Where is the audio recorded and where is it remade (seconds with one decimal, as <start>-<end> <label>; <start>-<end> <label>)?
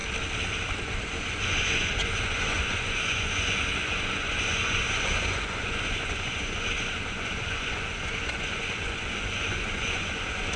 0.0-0.8 recorded; 0.8-10.6 remade